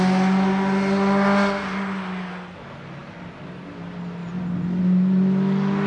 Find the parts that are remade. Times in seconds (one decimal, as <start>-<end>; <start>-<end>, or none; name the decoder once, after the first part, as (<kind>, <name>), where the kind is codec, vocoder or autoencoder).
none